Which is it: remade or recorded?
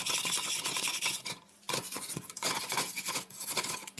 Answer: remade